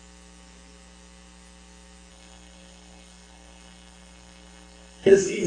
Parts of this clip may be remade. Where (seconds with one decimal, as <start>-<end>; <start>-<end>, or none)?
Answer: 2.1-5.5